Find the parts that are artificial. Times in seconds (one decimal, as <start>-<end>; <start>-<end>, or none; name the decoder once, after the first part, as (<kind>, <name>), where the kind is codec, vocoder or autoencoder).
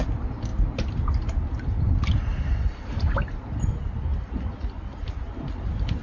none